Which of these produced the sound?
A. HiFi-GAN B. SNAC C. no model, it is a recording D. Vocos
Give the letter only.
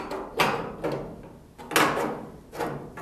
C